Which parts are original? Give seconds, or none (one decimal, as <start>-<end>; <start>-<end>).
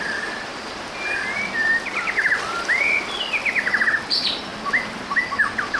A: 0.0-5.8